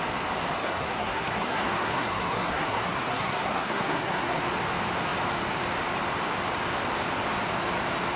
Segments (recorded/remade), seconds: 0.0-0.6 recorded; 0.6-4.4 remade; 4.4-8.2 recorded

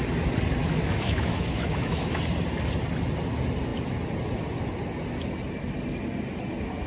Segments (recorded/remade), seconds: 0.0-0.6 recorded; 0.6-2.2 remade; 2.2-6.9 recorded

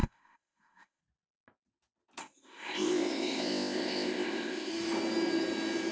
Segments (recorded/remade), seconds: 0.0-1.0 remade; 1.0-2.2 recorded; 2.2-4.7 remade; 4.7-5.9 recorded